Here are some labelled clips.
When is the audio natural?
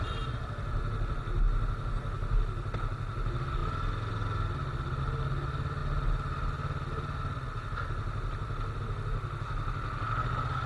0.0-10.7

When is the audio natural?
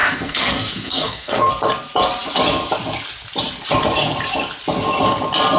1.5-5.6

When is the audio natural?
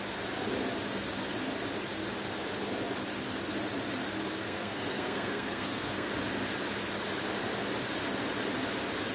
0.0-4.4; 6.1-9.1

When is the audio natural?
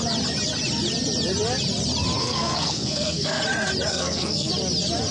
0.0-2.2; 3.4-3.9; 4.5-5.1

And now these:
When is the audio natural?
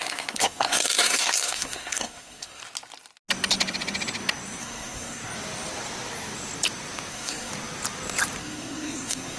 2.6-4.6; 5.2-7.1; 7.5-8.4